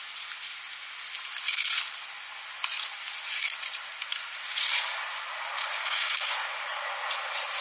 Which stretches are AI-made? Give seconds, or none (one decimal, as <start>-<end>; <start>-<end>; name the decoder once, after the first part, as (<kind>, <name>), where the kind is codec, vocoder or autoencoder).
5.8-6.3 (codec, DAC)